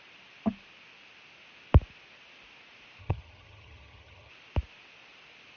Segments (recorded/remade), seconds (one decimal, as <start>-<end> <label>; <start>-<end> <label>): 0.0-3.0 recorded; 3.0-4.3 remade; 4.3-5.6 recorded